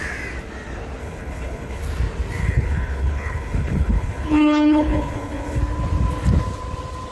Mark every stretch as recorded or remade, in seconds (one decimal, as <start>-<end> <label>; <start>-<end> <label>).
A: 0.0-1.0 recorded; 1.0-1.8 remade; 1.8-2.4 recorded; 2.4-5.6 remade; 5.6-7.1 recorded